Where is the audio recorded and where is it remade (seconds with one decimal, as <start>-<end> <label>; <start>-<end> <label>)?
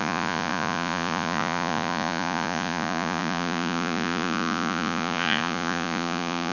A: 0.0-6.5 remade